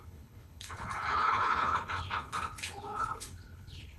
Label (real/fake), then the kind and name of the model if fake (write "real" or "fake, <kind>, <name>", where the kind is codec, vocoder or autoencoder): fake, codec, HILCodec